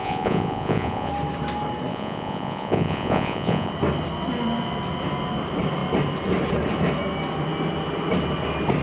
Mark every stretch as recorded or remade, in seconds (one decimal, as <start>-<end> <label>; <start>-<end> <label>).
0.0-1.1 remade; 1.1-1.9 recorded; 1.9-3.7 remade; 3.7-8.8 recorded

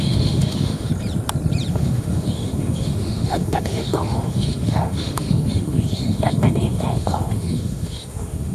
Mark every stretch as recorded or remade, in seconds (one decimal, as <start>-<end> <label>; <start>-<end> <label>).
0.0-0.9 remade; 0.9-1.7 recorded; 1.7-8.5 remade